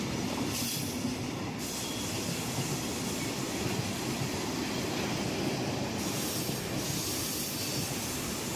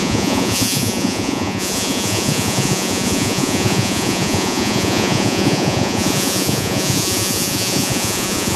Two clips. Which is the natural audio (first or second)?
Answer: first